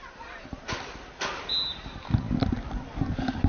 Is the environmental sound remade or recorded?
recorded